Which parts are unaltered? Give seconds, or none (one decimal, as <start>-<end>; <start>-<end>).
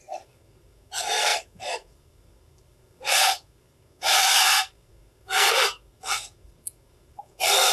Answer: none